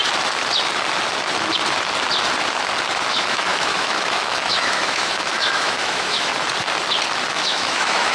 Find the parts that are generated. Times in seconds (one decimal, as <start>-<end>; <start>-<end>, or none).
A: 3.1-6.3; 7.3-8.1